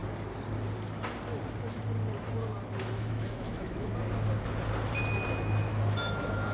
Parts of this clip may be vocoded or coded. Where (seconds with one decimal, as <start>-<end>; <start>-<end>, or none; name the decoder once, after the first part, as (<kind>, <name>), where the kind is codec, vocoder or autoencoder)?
2.8-3.9 (autoencoder, DAC-VAE); 5.3-6.5